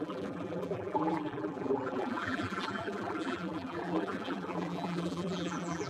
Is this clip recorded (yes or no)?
no